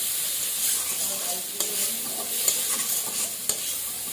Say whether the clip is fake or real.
real